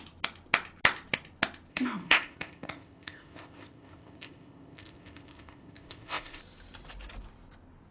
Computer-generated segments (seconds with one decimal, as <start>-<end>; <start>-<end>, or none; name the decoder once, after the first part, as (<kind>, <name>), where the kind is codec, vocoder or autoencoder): 1.7-6.4 (codec, ZipCodec)